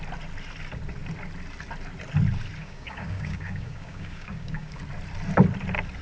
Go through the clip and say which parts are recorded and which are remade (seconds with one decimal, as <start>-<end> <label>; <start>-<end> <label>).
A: 0.0-2.6 recorded; 2.6-4.8 remade; 4.8-6.0 recorded